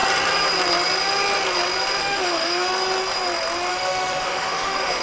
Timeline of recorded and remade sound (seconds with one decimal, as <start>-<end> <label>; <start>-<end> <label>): 0.0-2.0 recorded; 2.0-2.7 remade; 2.7-3.7 recorded; 3.7-5.0 remade